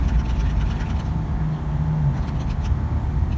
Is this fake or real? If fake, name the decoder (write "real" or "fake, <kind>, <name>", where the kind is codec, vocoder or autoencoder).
real